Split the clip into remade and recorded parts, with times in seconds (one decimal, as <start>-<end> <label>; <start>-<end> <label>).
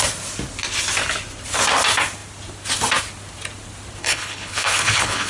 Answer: 0.0-4.0 recorded; 4.0-5.3 remade